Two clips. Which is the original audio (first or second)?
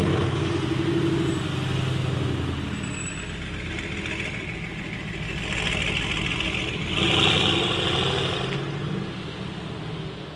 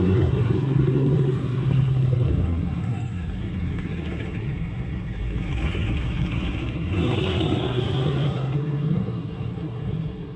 first